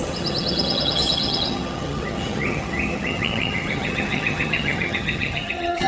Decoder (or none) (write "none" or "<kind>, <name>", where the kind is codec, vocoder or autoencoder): vocoder, HiFi-GAN